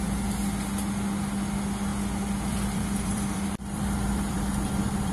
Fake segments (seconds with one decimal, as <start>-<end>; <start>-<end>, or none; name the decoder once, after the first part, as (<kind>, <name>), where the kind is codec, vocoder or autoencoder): 1.9-5.1 (vocoder, BigVGAN v2)

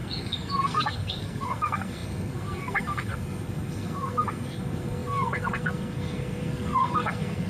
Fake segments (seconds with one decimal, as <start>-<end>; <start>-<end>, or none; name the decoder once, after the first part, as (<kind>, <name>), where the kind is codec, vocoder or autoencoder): 0.0-7.5 (codec, SNAC)

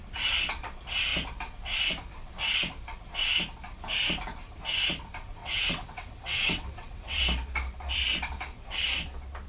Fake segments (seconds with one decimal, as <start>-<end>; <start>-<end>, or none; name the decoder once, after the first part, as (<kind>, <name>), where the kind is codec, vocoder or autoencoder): 5.4-7.2 (vocoder, WaveNeXt)

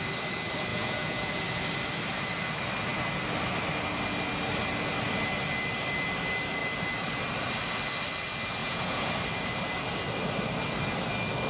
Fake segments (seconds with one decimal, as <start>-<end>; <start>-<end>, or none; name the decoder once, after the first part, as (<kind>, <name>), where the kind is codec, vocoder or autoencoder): 0.7-1.3 (vocoder, Vocos); 8.6-9.1

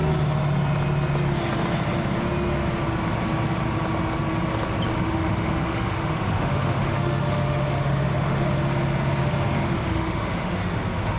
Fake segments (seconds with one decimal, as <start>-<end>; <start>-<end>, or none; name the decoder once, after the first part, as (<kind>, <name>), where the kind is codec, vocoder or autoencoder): 4.9-8.6 (autoencoder, DAC-VAE); 9.2-11.2

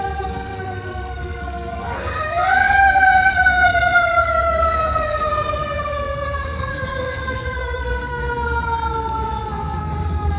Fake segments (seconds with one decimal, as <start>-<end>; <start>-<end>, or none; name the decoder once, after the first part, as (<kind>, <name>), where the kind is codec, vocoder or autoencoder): 0.0-10.4 (codec, SNAC)

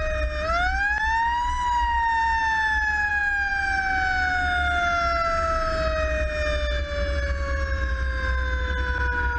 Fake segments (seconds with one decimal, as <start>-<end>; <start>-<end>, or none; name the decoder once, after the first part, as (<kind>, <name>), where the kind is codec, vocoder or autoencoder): none